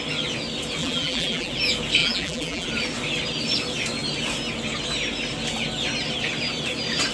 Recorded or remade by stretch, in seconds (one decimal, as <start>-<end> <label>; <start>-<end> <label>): 0.0-0.8 recorded; 0.8-1.5 remade; 1.5-2.0 recorded; 2.0-2.7 remade; 2.7-7.1 recorded